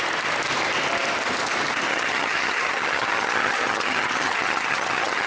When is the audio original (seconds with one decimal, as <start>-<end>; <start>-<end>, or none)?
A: 0.0-1.9